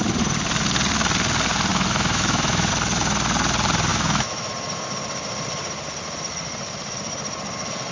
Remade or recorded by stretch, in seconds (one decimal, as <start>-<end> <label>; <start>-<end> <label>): 0.0-1.7 recorded; 1.7-2.7 remade; 2.7-3.9 recorded; 3.9-4.5 remade; 4.5-7.9 recorded